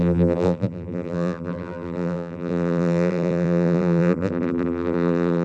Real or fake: fake